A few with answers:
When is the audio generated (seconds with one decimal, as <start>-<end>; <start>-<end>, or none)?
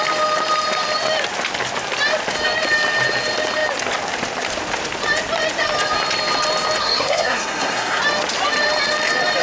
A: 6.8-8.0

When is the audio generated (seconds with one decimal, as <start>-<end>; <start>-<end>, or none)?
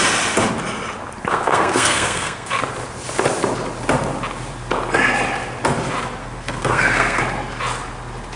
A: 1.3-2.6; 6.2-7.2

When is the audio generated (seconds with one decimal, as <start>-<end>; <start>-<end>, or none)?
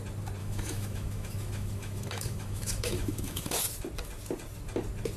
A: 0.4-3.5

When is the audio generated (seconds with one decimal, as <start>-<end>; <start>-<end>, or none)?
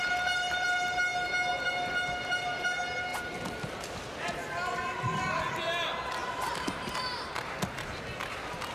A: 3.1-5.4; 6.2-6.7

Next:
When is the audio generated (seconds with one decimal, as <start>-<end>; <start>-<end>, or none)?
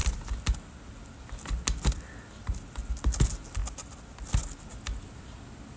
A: none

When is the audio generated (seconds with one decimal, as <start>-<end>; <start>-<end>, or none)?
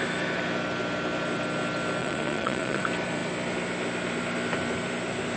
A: 2.0-2.8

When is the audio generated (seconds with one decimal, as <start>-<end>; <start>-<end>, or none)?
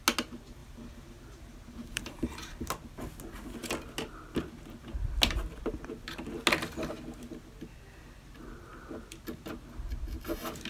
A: 0.6-2.7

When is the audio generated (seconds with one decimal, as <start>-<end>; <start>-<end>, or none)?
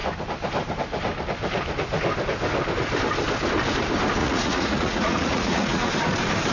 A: 4.2-5.9